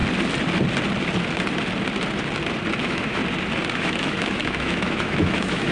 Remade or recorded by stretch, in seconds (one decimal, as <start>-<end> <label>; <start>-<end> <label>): 0.0-2.8 recorded; 2.8-3.2 remade; 3.2-3.7 recorded; 3.7-5.7 remade